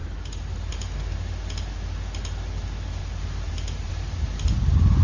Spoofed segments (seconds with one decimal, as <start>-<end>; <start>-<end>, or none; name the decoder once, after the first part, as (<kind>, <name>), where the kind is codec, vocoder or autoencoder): 0.0-0.7 (vocoder, BigVGAN v2); 3.0-3.9